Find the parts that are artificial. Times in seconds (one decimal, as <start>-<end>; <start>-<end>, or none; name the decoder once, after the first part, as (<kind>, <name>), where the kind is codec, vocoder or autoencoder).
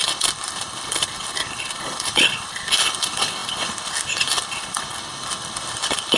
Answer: 0.0-6.2 (codec, HILCodec)